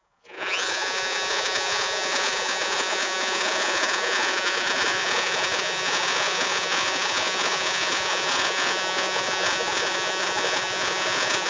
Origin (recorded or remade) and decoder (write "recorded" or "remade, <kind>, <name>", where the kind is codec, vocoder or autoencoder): remade, vocoder, Vocos